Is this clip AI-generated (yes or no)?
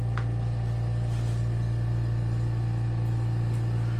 no